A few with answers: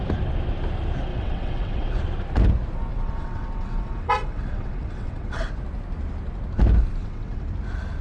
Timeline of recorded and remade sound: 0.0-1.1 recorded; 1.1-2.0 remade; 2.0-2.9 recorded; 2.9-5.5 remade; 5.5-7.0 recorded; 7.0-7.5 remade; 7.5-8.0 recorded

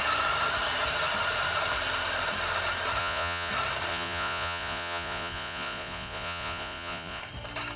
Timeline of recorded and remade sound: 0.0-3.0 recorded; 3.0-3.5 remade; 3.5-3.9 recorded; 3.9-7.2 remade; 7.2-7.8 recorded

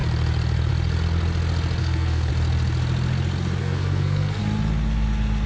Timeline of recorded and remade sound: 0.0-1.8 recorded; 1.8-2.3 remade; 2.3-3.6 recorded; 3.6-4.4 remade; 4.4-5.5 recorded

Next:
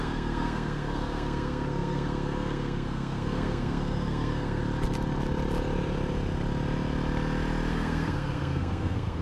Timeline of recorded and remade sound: 0.0-4.6 remade; 4.6-7.7 recorded; 7.7-9.2 remade

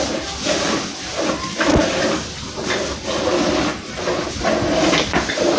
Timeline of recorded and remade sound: 0.0-5.6 recorded

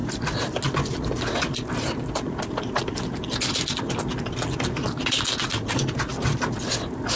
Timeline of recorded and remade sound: 0.0-7.2 recorded